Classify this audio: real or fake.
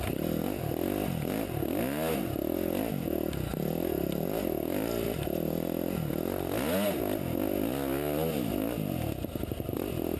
real